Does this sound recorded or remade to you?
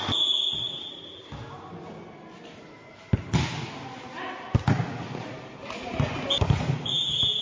recorded